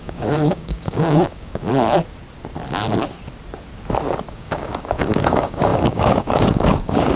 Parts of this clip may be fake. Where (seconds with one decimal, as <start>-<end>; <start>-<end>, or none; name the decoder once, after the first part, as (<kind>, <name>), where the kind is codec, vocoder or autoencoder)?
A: 0.0-1.7 (codec, DAC); 4.3-7.2

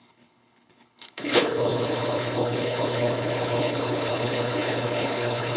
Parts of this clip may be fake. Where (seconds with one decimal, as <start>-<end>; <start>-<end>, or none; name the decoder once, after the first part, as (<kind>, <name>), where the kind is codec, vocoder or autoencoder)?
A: 0.0-5.6 (codec, HILCodec)

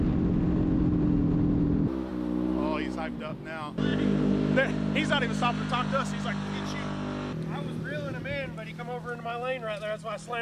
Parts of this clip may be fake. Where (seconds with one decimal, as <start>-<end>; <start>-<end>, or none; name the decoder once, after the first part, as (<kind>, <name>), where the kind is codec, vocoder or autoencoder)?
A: none

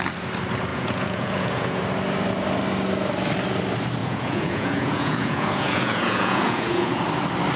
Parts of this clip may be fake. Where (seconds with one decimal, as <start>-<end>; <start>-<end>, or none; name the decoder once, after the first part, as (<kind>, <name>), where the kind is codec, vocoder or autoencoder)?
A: 0.7-1.8 (vocoder, Vocos); 4.0-7.0